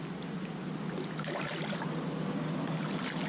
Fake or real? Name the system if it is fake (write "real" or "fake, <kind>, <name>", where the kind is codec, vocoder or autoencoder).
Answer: real